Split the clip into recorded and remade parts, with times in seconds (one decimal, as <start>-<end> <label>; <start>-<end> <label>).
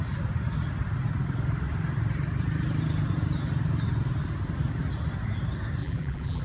0.0-5.8 recorded; 5.8-6.4 remade